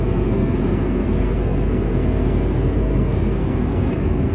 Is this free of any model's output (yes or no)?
no